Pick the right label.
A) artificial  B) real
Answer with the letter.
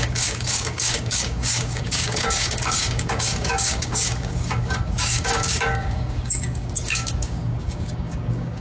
A